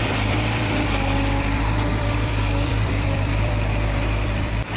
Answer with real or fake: fake